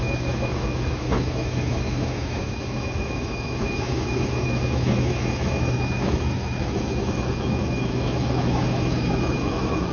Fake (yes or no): yes